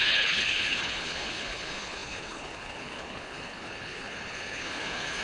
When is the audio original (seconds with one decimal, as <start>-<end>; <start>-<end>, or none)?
none